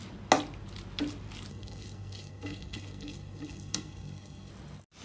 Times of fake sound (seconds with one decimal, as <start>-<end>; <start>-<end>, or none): 1.5-4.5